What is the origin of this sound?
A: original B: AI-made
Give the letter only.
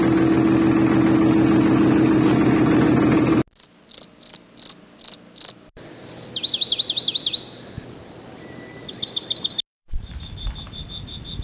A